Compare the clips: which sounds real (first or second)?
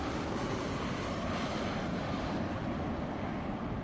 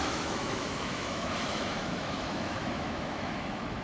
first